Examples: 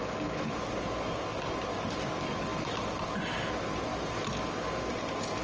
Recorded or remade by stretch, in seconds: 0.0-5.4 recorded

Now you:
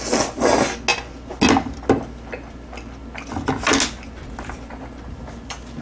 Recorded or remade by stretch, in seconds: 0.0-5.8 recorded